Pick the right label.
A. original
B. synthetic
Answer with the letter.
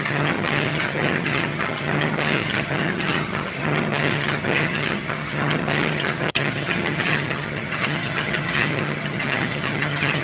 B